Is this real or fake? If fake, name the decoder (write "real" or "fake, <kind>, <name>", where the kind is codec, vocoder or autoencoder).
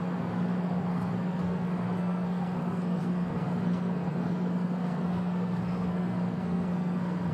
fake, codec, SNAC